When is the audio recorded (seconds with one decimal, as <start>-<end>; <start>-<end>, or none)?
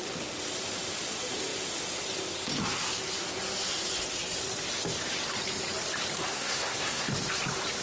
0.0-6.3; 7.1-7.8